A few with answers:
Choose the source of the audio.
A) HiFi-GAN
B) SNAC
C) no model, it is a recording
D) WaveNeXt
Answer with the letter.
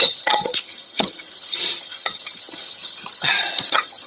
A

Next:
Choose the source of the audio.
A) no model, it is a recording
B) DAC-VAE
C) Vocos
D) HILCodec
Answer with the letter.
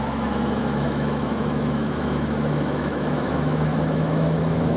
B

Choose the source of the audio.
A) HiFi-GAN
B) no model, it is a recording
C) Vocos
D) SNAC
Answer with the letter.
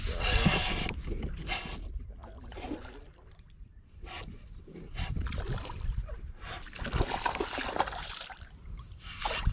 B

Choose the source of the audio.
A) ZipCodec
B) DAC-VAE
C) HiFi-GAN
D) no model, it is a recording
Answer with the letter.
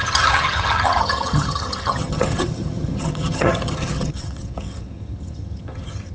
C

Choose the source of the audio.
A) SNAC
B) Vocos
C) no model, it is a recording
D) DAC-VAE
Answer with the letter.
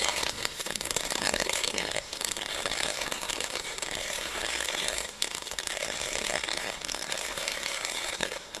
A